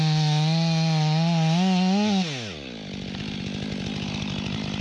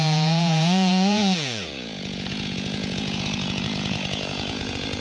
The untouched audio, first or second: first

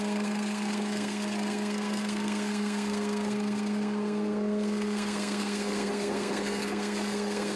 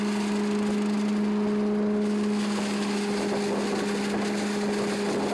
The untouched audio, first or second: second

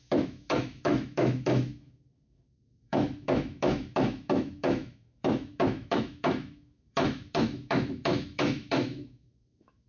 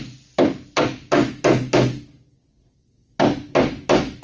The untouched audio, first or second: second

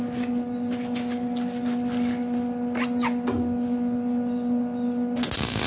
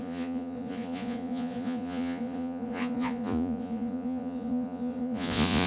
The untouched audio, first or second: first